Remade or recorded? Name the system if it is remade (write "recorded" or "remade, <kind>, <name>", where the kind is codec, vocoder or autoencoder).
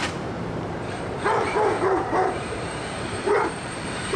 remade, vocoder, BigVGAN v2